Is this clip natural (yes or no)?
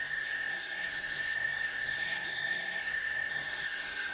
no